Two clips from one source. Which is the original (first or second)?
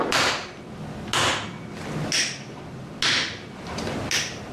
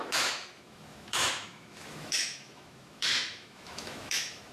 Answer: first